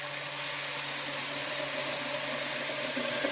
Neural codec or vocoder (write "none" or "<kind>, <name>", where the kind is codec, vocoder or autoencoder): none